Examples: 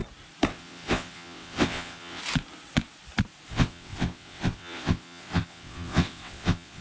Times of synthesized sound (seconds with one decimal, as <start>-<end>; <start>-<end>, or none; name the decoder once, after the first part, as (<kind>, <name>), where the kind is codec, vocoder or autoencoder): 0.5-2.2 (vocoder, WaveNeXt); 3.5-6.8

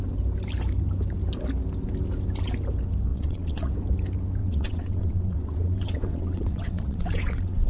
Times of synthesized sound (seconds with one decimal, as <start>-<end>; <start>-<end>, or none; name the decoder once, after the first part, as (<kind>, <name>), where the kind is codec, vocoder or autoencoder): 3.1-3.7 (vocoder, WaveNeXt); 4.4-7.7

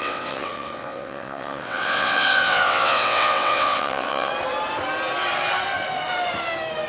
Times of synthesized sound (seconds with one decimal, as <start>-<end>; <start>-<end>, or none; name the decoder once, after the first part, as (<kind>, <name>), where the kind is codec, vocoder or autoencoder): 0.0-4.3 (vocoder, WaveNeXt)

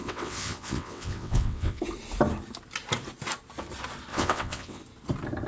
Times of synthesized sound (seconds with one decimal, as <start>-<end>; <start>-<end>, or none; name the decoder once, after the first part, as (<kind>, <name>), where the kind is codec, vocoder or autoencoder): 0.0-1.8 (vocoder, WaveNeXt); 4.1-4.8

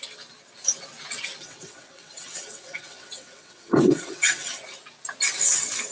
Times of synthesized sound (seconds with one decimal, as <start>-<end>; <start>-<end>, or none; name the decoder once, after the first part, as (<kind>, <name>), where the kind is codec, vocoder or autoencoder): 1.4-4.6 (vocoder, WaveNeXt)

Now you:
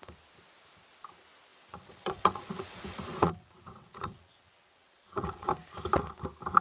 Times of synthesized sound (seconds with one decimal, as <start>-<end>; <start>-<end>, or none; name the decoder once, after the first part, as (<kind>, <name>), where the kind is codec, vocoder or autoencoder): 1.5-5.5 (vocoder, WaveNeXt)